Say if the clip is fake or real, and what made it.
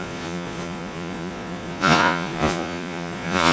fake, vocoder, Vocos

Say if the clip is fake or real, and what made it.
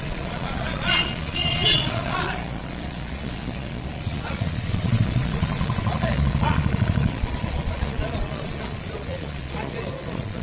fake, vocoder, Vocos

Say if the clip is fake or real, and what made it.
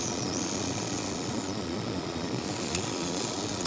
fake, vocoder, Vocos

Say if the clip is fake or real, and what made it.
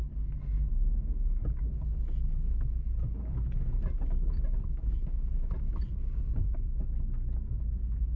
real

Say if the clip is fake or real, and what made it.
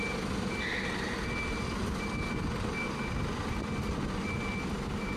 real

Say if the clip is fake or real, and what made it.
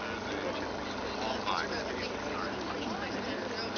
real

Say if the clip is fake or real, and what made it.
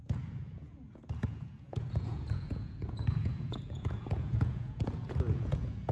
fake, vocoder, Vocos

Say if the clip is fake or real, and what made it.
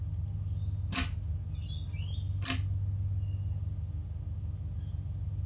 real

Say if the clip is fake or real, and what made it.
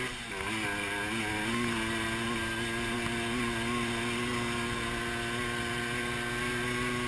real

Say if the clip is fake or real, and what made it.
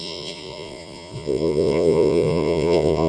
fake, vocoder, Vocos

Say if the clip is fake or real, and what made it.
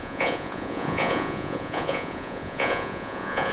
fake, vocoder, Vocos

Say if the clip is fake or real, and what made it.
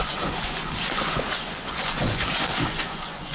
fake, vocoder, Vocos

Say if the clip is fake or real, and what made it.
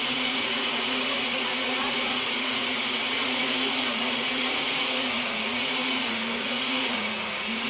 fake, vocoder, Vocos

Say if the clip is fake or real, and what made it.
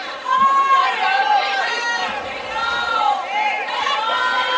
real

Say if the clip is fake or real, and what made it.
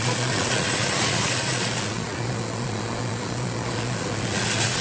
fake, vocoder, Vocos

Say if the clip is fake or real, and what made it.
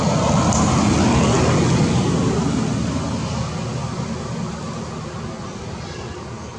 real